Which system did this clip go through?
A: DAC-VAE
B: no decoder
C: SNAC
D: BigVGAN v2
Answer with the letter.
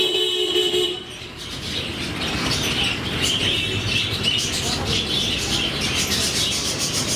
B